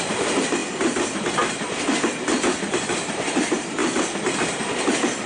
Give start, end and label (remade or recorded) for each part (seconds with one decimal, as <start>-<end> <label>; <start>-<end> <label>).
0.0-0.6 remade; 0.6-2.2 recorded; 2.2-3.8 remade; 3.8-4.4 recorded; 4.4-5.3 remade